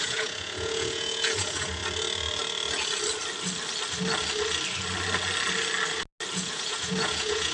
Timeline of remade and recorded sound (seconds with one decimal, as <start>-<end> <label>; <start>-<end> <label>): 0.0-1.8 remade; 1.8-6.3 recorded; 6.3-7.5 remade